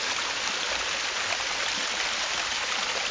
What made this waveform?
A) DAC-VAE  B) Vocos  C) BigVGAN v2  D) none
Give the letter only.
D